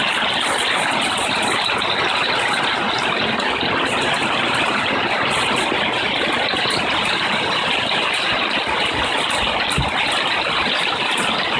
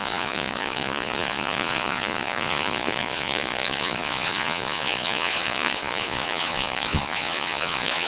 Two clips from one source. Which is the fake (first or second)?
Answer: second